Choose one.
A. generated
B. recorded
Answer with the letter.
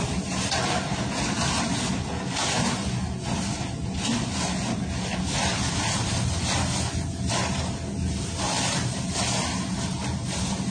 B